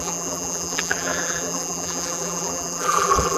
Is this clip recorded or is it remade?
remade